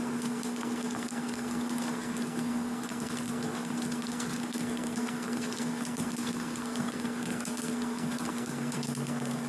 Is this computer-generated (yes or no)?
yes